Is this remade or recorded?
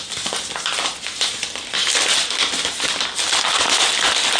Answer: recorded